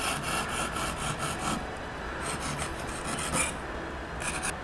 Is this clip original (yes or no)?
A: yes